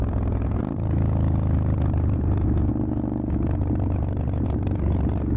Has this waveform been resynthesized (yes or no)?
no